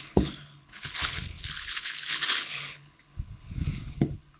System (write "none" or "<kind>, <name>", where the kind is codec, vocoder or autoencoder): codec, HILCodec